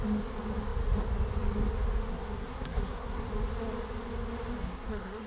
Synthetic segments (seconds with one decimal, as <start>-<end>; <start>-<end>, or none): 2.1-3.3; 4.6-5.3